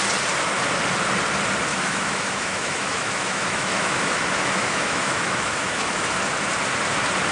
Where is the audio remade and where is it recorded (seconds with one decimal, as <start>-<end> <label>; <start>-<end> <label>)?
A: 0.0-1.7 recorded; 1.7-6.1 remade; 6.1-7.3 recorded